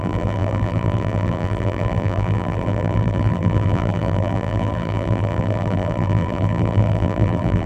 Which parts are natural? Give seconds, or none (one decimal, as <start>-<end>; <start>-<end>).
none